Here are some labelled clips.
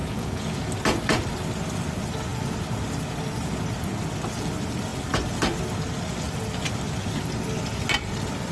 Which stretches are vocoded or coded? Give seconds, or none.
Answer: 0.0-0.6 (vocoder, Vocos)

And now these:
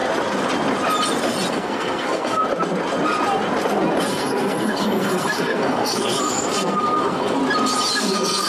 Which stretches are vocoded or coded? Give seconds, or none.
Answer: 1.5-2.4 (codec, SNAC); 4.1-7.4; 7.9-8.5

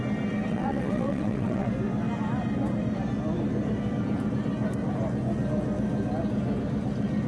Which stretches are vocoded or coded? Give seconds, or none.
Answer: 0.5-1.7 (vocoder, WaveNeXt)

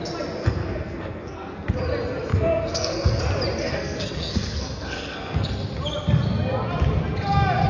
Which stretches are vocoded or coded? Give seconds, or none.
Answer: 0.4-1.7 (codec, SNAC); 2.3-3.2; 3.6-5.5

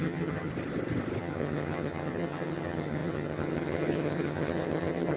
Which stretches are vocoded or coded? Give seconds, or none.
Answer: 0.0-0.5 (vocoder, HiFi-GAN); 1.2-5.2

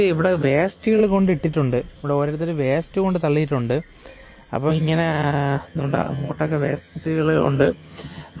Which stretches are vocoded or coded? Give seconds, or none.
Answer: 0.0-1.0 (vocoder, HiFi-GAN); 4.7-8.4

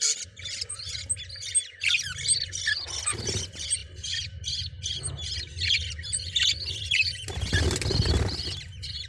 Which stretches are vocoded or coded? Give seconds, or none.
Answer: none

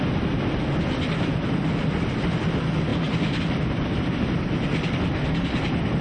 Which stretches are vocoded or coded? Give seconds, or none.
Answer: none